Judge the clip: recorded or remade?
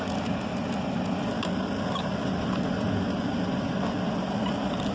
recorded